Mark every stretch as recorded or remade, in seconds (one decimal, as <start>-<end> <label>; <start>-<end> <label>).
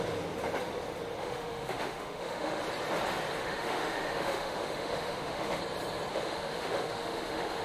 0.0-1.2 recorded; 1.2-2.6 remade; 2.6-3.4 recorded; 3.4-5.6 remade; 5.6-6.1 recorded; 6.1-7.6 remade